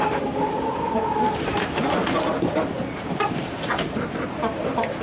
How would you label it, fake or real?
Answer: fake